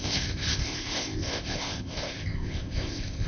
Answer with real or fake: fake